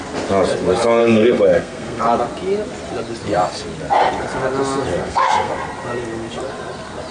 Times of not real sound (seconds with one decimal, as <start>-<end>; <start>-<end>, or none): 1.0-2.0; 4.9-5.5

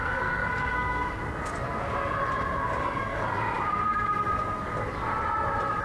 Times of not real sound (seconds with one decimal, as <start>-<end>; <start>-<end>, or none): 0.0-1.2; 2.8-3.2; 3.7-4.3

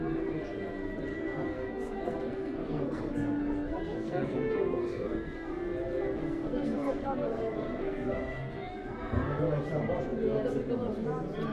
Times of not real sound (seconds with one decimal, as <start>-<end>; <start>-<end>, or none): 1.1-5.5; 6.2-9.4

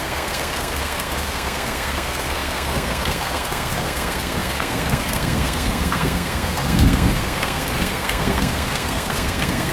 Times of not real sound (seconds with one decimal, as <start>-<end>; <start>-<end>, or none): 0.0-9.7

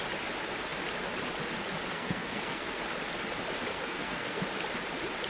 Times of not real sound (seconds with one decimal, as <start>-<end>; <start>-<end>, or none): 1.9-2.8; 3.7-4.4

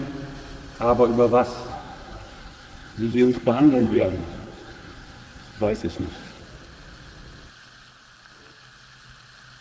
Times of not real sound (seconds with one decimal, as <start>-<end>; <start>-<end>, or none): 1.7-6.4

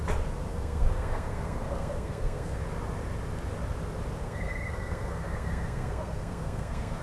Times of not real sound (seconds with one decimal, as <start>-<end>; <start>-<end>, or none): 0.5-2.6; 4.2-7.0